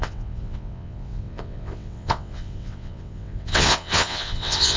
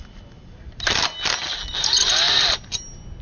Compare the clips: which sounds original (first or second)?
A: second